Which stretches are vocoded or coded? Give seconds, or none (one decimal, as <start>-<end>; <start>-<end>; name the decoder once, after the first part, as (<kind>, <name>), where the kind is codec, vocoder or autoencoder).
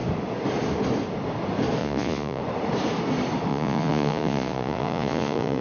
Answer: 1.8-2.4 (vocoder, Vocos); 3.5-5.6